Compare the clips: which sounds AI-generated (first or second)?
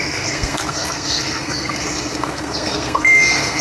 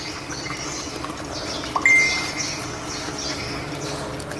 first